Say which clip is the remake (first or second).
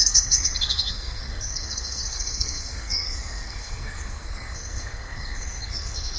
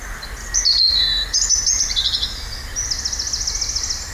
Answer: first